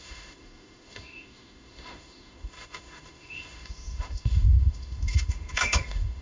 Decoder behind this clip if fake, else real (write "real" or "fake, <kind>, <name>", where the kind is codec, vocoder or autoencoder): fake, autoencoder, DAC-VAE